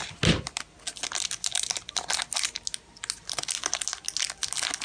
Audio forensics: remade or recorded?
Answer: recorded